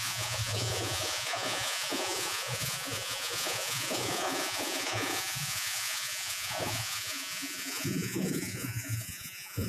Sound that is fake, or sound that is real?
fake